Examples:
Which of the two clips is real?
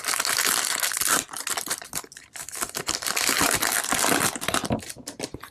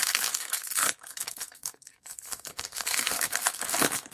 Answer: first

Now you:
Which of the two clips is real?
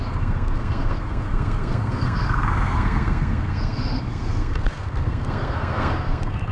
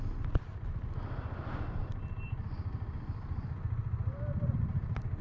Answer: second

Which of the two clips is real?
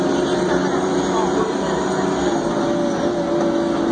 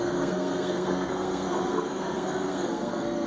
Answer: first